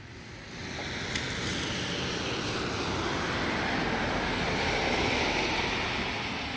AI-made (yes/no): no